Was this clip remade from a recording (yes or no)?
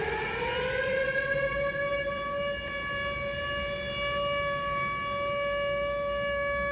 no